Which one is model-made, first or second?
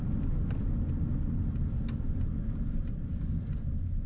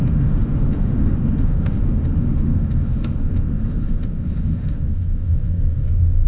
second